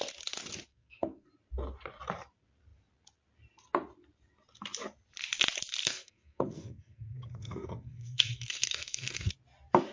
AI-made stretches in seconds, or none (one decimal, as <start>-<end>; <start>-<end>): 0.7-1.3; 5.8-9.3